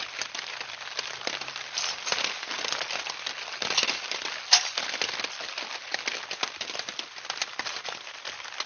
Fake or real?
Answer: real